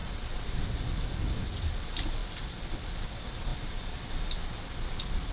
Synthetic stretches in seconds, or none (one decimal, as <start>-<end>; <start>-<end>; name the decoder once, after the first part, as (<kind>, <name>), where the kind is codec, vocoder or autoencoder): 0.0-0.7 (vocoder, BigVGAN v2)